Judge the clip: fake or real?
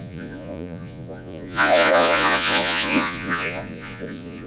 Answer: fake